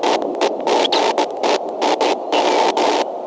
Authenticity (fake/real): real